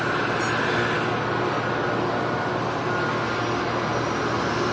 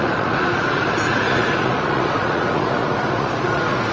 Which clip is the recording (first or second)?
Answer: first